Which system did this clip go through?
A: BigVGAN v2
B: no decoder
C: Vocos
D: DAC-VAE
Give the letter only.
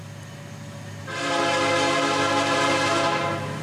B